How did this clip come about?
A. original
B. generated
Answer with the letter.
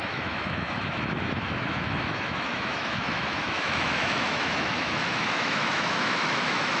B